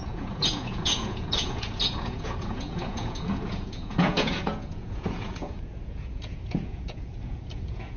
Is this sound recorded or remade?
remade